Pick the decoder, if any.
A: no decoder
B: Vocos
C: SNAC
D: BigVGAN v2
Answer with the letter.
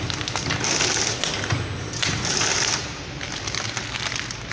A